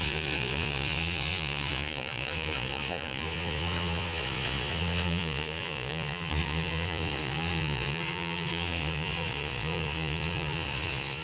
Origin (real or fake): fake